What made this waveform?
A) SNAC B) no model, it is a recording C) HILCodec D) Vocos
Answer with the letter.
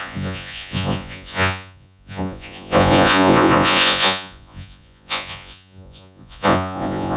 D